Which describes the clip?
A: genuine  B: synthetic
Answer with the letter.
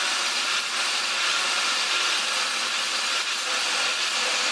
A